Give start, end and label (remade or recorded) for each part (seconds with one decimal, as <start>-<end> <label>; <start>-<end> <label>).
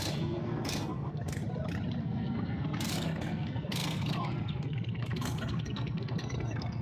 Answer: 0.0-1.4 remade; 1.4-2.0 recorded; 2.0-6.8 remade